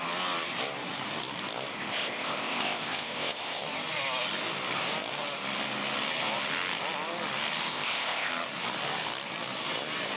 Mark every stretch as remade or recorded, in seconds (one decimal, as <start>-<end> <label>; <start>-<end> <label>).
0.0-1.7 recorded; 1.7-3.6 remade; 3.6-7.7 recorded; 7.7-8.3 remade; 8.3-10.2 recorded